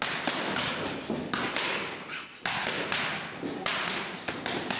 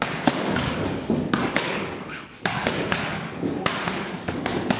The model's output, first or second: second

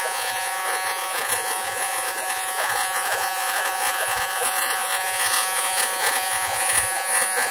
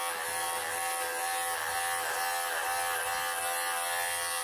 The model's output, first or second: first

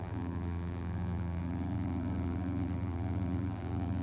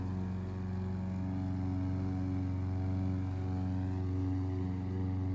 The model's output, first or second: first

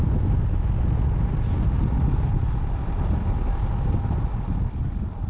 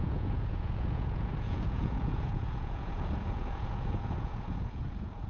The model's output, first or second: second